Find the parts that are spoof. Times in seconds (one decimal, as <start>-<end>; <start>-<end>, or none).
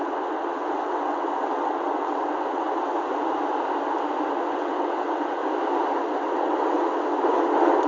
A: 0.0-3.2; 4.4-5.4; 5.9-7.9